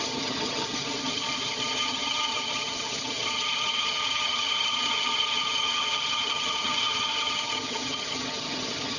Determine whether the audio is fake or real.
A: fake